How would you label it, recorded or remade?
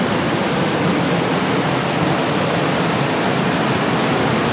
recorded